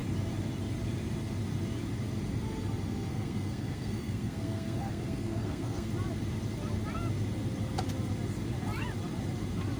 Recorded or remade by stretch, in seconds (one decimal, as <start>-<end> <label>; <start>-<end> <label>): 0.0-3.1 recorded; 3.1-5.9 remade; 5.9-9.8 recorded